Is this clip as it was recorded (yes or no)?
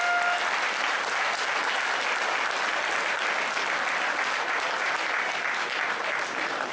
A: yes